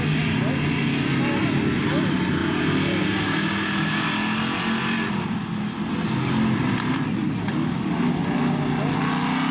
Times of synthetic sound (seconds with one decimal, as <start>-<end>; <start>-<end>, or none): none